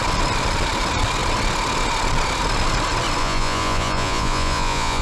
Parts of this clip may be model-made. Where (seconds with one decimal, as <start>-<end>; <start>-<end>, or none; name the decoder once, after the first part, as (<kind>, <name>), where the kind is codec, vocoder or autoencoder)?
3.2-5.0 (vocoder, Vocos)